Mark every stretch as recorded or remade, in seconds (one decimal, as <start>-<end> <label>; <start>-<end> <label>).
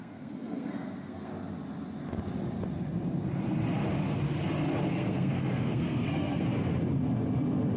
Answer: 0.0-1.3 remade; 1.3-4.9 recorded; 4.9-6.5 remade; 6.5-7.8 recorded